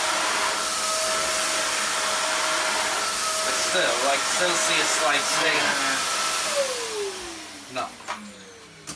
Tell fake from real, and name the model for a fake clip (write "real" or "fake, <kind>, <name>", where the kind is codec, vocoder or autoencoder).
real